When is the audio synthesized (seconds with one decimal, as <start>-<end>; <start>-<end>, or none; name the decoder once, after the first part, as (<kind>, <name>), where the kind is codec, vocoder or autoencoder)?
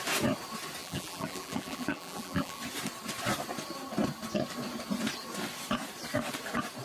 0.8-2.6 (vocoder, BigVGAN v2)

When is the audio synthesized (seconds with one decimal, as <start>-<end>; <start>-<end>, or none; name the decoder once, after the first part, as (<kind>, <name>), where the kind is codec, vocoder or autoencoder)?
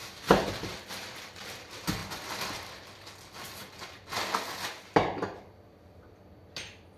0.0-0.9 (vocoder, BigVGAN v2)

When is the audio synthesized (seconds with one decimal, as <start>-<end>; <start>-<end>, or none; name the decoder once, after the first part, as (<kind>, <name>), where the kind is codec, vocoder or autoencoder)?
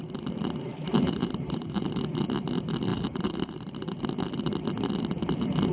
0.7-2.1 (vocoder, BigVGAN v2); 2.9-4.0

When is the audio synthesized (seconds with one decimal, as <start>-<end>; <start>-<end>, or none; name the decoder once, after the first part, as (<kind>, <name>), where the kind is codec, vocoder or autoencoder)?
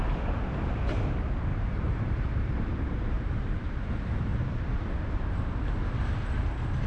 1.5-3.9 (vocoder, BigVGAN v2)